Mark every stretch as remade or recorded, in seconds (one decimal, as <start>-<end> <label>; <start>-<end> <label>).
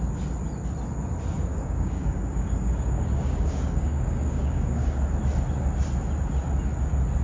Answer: 0.0-1.5 recorded; 1.5-5.0 remade; 5.0-7.2 recorded